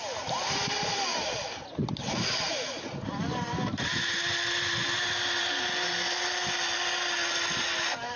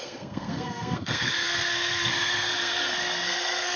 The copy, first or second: second